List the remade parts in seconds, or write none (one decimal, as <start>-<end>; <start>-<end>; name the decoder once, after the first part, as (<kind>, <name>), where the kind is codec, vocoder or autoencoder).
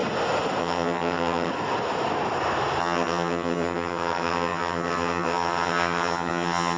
0.6-1.5 (vocoder, HiFi-GAN); 2.8-6.8